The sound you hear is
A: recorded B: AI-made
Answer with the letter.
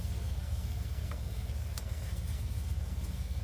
B